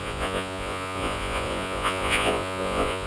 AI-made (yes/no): yes